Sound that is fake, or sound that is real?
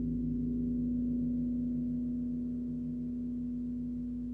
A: real